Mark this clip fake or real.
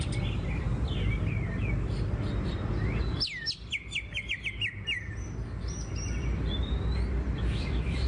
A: real